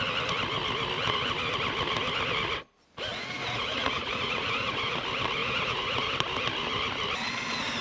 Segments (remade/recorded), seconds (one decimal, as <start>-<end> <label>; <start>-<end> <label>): 0.0-3.1 recorded; 3.1-5.0 remade; 5.0-5.4 recorded; 5.4-6.1 remade; 6.1-7.8 recorded